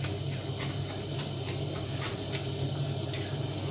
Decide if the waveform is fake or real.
real